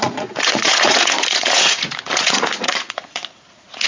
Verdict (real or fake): fake